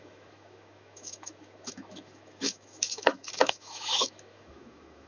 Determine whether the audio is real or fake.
fake